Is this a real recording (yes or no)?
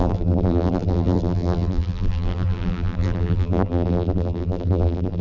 no